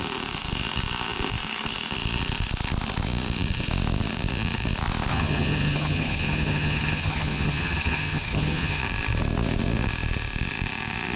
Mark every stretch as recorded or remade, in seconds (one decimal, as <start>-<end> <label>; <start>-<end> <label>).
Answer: 0.0-5.1 recorded; 5.1-8.8 remade; 8.8-11.2 recorded